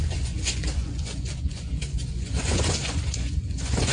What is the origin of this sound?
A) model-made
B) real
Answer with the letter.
A